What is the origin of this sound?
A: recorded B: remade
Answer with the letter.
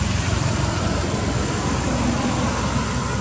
A